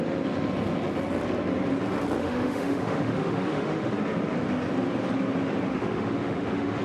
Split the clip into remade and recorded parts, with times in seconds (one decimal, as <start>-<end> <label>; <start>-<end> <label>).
0.0-2.2 recorded; 2.2-3.9 remade; 3.9-5.7 recorded; 5.7-6.8 remade